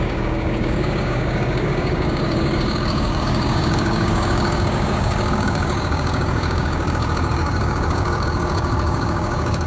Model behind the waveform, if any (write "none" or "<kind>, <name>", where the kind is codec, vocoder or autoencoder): codec, DAC